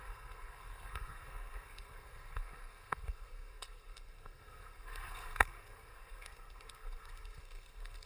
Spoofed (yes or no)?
yes